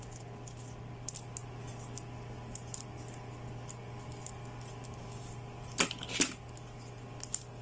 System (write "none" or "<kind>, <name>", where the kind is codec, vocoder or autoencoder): none